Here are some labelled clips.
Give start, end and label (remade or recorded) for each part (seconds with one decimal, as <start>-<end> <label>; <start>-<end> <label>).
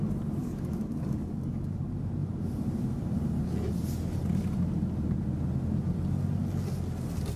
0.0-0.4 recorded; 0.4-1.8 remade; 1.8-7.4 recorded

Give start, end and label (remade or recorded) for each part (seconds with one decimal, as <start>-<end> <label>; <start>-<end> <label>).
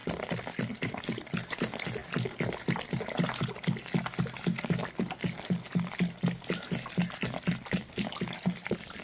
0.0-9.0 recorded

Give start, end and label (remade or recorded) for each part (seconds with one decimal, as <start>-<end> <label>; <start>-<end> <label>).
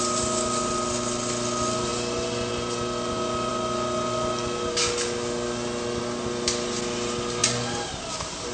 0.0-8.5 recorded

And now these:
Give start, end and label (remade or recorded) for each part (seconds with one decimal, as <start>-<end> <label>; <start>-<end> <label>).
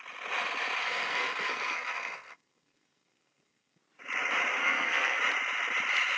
0.0-0.8 recorded; 0.8-3.8 remade; 3.8-4.6 recorded; 4.6-5.2 remade; 5.2-6.2 recorded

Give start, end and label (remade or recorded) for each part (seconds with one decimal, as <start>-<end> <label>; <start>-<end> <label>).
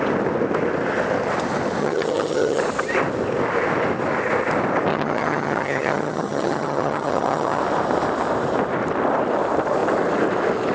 0.0-1.8 recorded; 1.8-2.6 remade; 2.6-4.9 recorded; 4.9-7.6 remade; 7.6-10.7 recorded